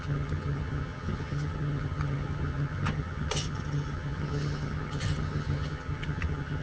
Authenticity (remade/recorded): remade